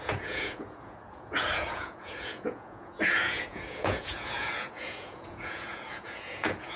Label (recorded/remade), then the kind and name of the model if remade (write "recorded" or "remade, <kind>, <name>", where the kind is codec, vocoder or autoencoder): remade, vocoder, Vocos